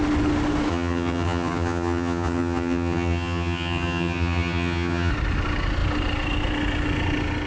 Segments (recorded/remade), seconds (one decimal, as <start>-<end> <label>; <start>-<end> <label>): 0.0-0.7 recorded; 0.7-5.1 remade; 5.1-7.5 recorded